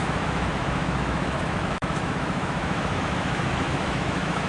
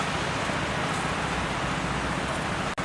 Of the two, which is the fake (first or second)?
first